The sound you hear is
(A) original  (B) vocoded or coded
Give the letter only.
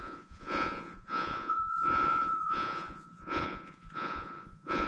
B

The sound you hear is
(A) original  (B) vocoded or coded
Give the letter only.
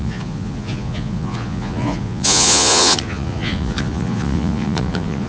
B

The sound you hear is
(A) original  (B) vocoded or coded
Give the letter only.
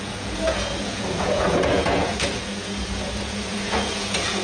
B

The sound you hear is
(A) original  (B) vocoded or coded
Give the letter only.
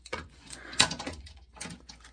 B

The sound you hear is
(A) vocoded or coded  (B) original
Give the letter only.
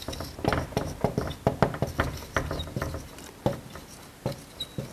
B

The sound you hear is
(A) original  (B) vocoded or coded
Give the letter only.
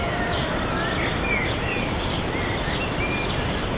A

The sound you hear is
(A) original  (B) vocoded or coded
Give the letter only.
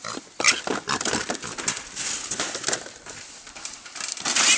A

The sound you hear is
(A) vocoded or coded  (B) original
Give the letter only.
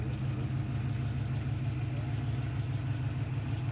B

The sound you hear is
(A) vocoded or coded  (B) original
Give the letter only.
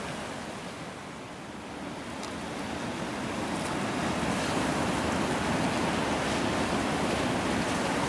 B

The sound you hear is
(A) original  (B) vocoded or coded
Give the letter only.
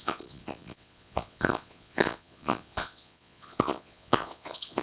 B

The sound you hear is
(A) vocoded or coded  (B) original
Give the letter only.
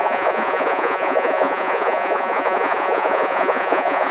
A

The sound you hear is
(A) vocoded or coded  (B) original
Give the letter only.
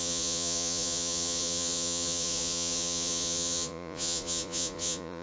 A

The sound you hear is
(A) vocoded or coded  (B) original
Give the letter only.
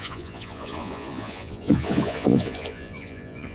A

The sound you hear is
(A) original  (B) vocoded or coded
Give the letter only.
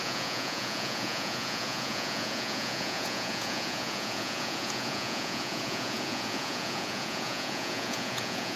B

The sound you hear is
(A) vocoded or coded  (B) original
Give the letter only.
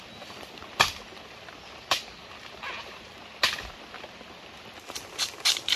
B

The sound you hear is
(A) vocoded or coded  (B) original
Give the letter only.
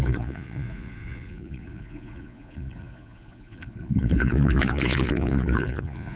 A